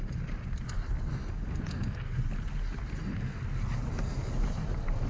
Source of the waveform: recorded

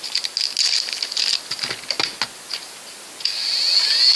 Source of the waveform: recorded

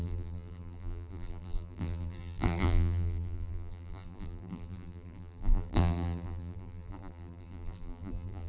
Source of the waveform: remade